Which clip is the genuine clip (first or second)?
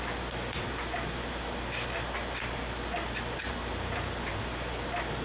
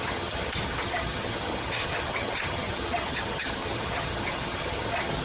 first